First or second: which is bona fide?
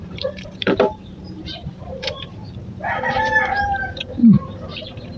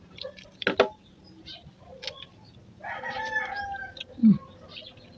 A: second